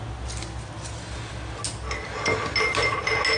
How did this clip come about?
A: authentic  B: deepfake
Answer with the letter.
A